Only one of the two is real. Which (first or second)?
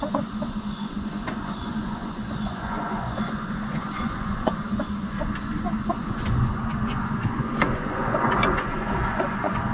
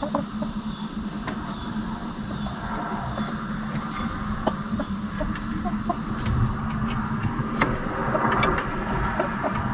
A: second